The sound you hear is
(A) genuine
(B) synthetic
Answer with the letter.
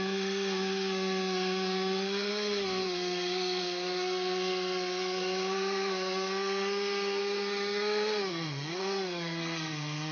B